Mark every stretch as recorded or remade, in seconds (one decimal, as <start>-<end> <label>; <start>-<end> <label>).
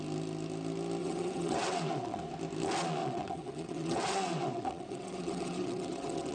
0.0-1.0 recorded; 1.0-2.2 remade; 2.2-3.0 recorded; 3.0-6.3 remade